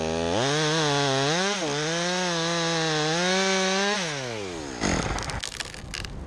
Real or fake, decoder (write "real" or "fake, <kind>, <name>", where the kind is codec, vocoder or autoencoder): real